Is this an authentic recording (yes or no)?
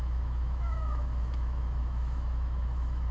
no